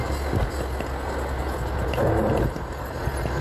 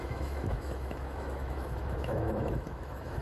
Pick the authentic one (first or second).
first